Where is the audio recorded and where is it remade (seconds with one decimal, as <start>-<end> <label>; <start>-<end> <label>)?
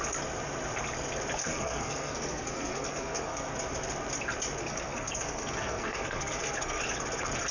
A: 0.0-1.4 recorded; 1.4-3.5 remade; 3.5-4.6 recorded; 4.6-6.8 remade; 6.8-7.5 recorded